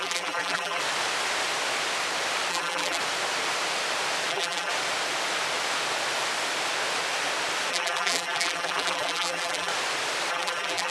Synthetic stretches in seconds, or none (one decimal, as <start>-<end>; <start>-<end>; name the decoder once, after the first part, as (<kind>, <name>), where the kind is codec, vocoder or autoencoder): 0.0-0.8 (vocoder, BigVGAN v2); 2.5-3.0; 4.3-4.7; 7.7-9.7; 10.3-10.9